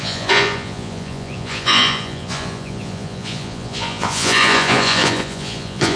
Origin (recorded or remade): remade